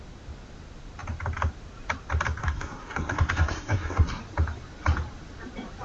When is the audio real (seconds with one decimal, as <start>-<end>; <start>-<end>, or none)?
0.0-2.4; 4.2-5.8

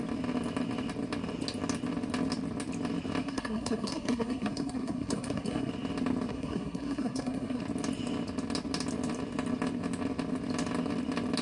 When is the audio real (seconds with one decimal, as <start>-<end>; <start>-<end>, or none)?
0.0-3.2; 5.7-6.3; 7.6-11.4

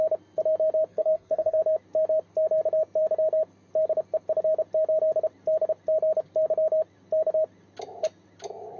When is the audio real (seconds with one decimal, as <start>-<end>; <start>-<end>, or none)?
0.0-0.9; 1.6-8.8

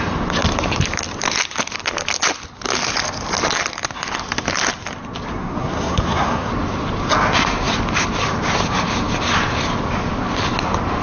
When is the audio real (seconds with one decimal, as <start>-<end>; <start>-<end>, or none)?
0.0-5.3; 6.5-11.0

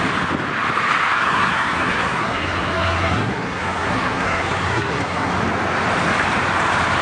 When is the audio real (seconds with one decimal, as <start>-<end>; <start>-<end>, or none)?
0.0-1.1; 5.3-7.0

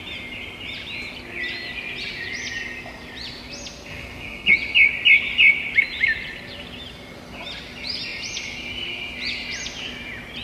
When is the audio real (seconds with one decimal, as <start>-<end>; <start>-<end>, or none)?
0.0-3.9; 4.5-10.4

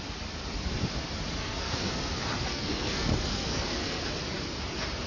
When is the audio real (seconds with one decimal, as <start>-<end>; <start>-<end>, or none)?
0.0-1.4; 2.1-2.5; 4.1-5.1

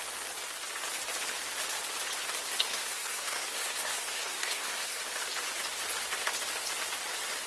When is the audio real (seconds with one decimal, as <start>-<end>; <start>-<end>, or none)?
0.0-2.7; 5.0-7.5